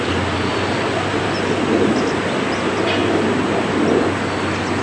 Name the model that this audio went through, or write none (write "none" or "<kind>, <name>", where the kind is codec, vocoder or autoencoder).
none